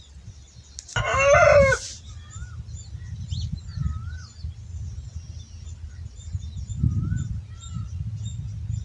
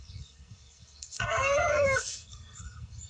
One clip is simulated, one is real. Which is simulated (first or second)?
second